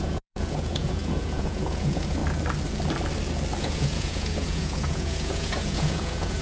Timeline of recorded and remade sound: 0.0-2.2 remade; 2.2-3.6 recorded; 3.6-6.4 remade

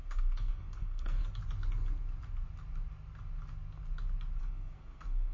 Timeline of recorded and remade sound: 0.0-1.2 remade; 1.2-4.4 recorded; 4.4-5.3 remade

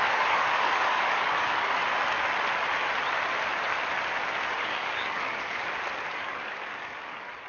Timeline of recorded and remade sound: 0.0-1.8 remade; 1.8-4.6 recorded; 4.6-5.6 remade; 5.6-6.1 recorded; 6.1-7.5 remade

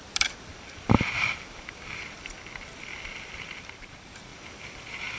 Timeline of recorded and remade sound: 0.0-0.5 remade; 0.5-3.6 recorded; 3.6-4.3 remade; 4.3-4.8 recorded; 4.8-5.2 remade

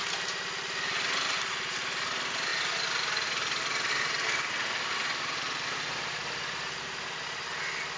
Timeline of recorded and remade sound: 0.0-2.5 recorded; 2.5-3.9 remade; 3.9-8.0 recorded

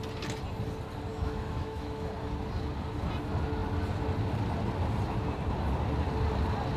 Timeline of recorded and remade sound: 0.0-1.1 recorded; 1.1-2.1 remade; 2.1-6.8 recorded

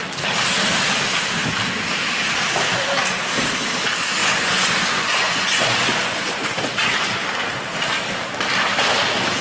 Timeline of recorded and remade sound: 0.0-4.2 recorded; 4.2-7.2 remade; 7.2-9.4 recorded